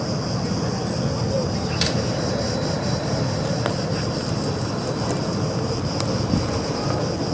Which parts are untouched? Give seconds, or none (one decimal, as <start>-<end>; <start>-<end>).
0.0-1.4; 4.7-7.3